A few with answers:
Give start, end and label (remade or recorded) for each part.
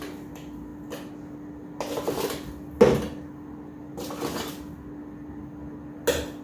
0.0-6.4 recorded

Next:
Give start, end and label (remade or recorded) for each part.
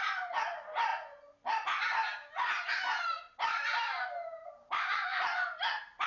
0.0-0.9 remade; 0.9-1.8 recorded; 1.8-6.1 remade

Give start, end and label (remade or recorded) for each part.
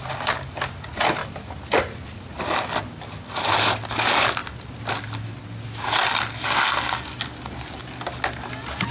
0.0-8.9 recorded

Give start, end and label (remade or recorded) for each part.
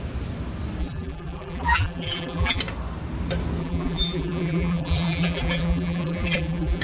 0.0-0.8 recorded; 0.8-2.6 remade; 2.6-3.6 recorded; 3.6-6.8 remade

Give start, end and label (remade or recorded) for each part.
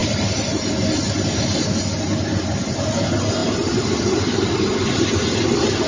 0.0-5.9 recorded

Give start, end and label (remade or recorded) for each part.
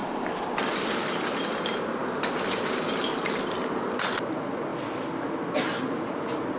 0.0-4.7 remade; 4.7-5.8 recorded; 5.8-6.6 remade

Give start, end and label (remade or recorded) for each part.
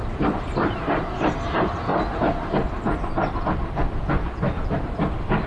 0.0-1.3 remade; 1.3-4.2 recorded; 4.2-5.5 remade